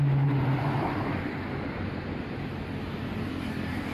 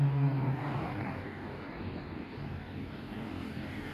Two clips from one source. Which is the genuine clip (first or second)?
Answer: first